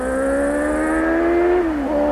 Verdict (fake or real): real